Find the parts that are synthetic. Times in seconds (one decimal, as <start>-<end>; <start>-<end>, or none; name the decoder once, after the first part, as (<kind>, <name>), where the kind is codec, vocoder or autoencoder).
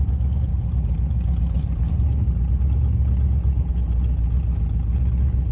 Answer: 0.5-3.7 (vocoder, BigVGAN v2)